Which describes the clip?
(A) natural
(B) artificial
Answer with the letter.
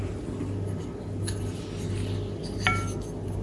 A